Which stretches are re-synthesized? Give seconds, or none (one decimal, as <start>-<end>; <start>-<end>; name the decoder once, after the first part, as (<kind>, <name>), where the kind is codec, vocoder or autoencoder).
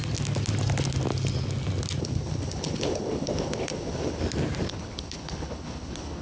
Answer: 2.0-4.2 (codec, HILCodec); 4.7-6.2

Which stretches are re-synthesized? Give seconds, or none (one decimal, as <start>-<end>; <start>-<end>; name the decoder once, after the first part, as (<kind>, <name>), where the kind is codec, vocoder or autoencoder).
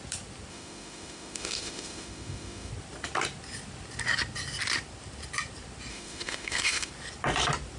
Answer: 0.5-2.7 (autoencoder, DAC-VAE); 5.9-6.9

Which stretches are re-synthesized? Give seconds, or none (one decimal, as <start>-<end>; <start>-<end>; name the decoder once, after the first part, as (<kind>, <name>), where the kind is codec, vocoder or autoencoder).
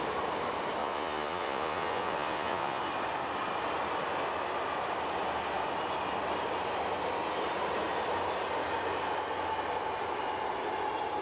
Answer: 0.8-2.8 (vocoder, Vocos)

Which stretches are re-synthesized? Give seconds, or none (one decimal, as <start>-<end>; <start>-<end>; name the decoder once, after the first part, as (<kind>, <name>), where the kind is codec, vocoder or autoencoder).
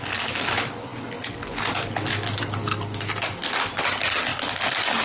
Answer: none